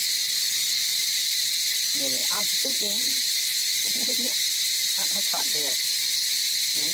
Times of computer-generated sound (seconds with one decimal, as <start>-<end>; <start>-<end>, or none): 0.9-1.5; 2.2-5.2